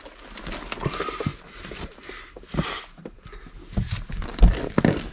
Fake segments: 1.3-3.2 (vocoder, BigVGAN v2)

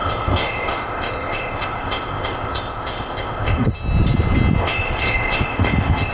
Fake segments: 0.0-3.7 (codec, ZipCodec); 4.6-6.1